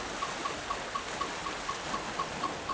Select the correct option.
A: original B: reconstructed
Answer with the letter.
A